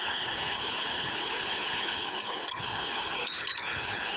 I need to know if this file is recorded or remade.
remade